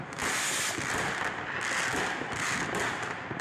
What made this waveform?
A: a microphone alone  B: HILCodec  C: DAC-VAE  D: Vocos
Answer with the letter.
A